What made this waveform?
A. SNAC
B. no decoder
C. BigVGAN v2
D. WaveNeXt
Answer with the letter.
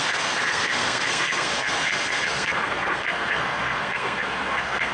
A